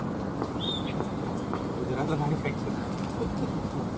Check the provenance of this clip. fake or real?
real